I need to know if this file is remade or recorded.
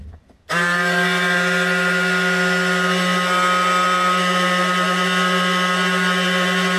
recorded